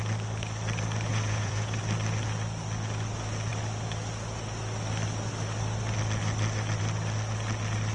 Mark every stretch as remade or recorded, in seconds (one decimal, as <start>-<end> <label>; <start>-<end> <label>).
0.0-1.1 recorded; 1.1-1.8 remade; 1.8-7.9 recorded